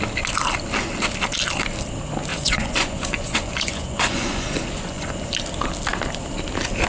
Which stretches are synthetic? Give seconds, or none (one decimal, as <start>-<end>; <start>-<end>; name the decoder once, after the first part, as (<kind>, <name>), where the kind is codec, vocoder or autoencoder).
2.3-5.3 (vocoder, Vocos)